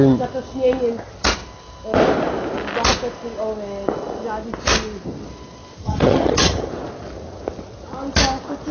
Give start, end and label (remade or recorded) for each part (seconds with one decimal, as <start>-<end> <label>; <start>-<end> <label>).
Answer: 0.0-5.8 recorded; 5.8-6.7 remade; 6.7-8.7 recorded